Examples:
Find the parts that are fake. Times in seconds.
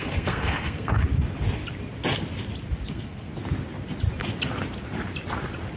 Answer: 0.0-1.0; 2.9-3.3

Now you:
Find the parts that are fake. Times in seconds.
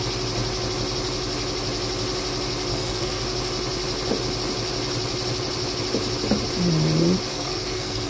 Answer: 2.7-3.2; 7.3-8.1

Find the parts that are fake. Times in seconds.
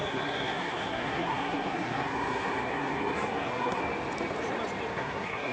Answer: 0.0-3.8; 4.9-5.5